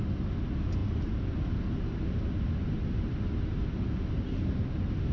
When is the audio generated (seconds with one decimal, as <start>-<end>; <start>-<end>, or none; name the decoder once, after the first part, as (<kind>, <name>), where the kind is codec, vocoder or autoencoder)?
none

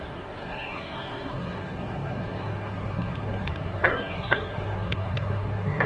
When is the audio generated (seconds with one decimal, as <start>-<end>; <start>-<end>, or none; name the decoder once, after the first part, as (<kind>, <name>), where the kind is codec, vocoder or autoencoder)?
0.0-5.9 (codec, SNAC)